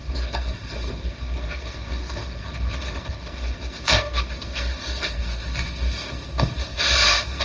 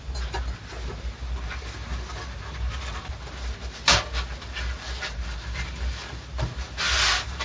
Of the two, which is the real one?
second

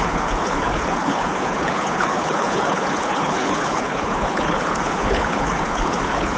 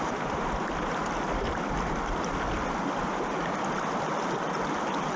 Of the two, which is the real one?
second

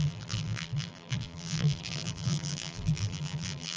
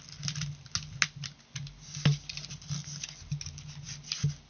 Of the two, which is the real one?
second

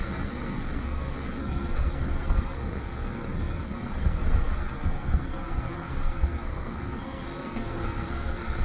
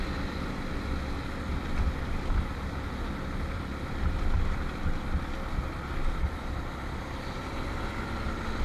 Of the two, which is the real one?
second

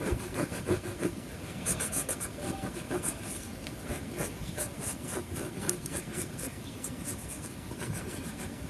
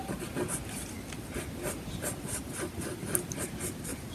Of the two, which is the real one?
second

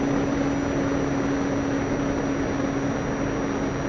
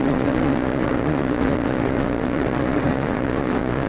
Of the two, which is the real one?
first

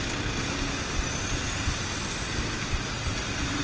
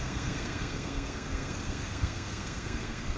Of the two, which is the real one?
first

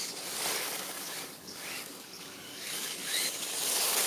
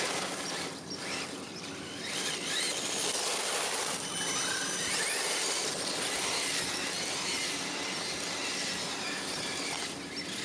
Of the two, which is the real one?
second